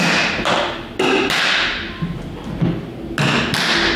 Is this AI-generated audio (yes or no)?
no